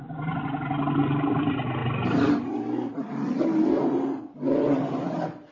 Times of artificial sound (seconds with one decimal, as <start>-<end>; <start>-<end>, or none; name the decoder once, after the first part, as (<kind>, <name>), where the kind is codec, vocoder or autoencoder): none